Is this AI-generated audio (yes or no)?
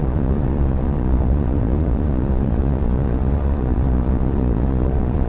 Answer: yes